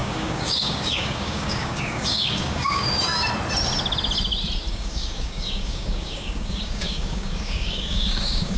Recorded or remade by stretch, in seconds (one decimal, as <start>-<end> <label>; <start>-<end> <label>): 0.0-3.1 remade; 3.1-4.7 recorded; 4.7-8.6 remade